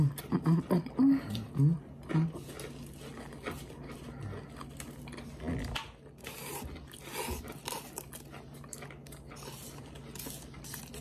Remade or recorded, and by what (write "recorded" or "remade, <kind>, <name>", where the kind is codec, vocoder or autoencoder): recorded